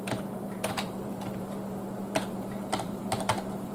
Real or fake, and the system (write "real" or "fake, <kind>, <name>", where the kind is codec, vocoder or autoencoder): fake, vocoder, BigVGAN v2